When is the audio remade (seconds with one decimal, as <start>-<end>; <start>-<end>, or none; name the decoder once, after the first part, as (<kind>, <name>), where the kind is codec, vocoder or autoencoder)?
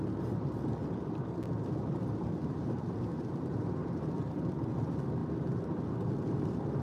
2.4-4.0 (vocoder, BigVGAN v2)